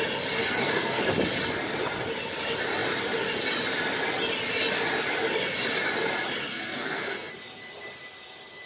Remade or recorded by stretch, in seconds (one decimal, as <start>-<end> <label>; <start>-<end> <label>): 0.0-0.4 recorded; 0.4-1.0 remade; 1.0-6.5 recorded; 6.5-7.3 remade; 7.3-8.7 recorded